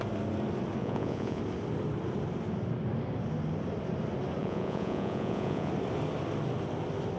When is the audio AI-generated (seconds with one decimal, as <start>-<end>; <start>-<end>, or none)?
0.8-1.4; 4.4-5.7